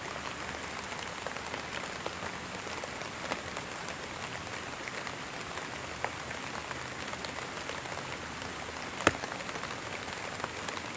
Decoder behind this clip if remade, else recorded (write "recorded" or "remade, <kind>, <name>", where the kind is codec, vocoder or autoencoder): recorded